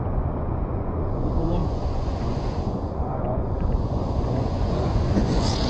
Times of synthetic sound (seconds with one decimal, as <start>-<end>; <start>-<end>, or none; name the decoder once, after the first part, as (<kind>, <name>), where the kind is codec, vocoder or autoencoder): 0.0-5.7 (vocoder, Vocos)